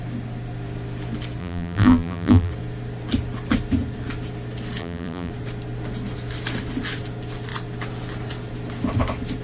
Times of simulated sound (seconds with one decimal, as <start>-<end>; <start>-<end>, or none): 1.4-2.5; 4.8-5.3